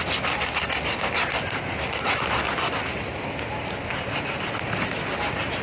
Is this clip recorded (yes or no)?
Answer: yes